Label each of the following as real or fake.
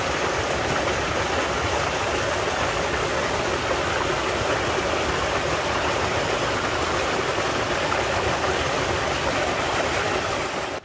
real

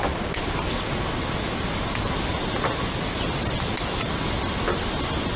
real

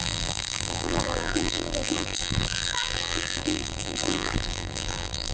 fake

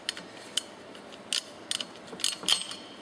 real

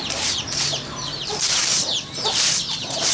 real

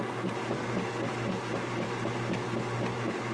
real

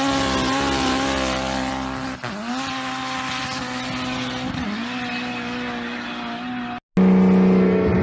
real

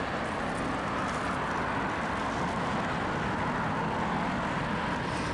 real